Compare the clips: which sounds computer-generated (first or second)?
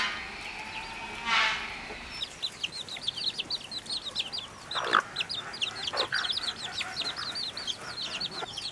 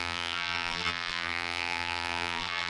second